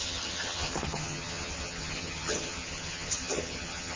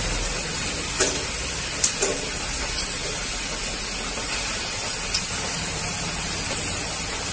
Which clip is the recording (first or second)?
second